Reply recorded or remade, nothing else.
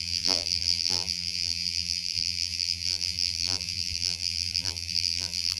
remade